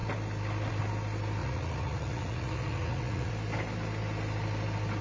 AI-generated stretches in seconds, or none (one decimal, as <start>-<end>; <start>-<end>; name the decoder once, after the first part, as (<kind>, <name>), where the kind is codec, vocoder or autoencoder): 1.4-3.3 (vocoder, Vocos)